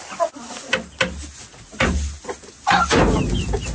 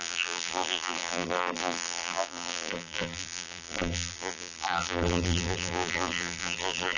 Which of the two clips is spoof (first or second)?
second